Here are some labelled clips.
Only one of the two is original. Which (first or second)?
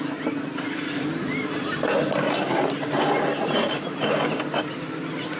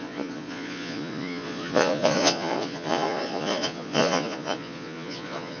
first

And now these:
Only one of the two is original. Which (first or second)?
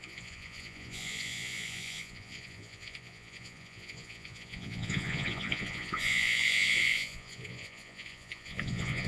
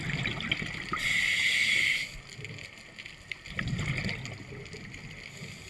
second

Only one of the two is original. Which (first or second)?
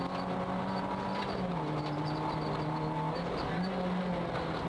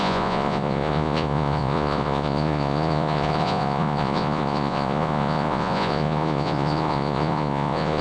first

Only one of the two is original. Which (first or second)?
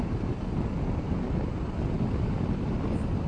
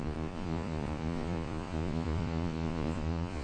first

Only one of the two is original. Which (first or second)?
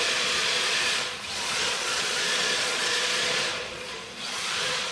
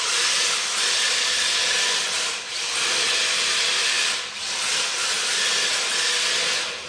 second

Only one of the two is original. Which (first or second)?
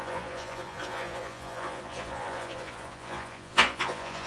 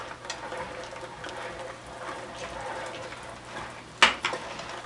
second